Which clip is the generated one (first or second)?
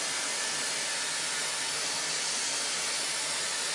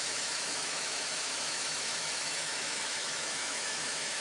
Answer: second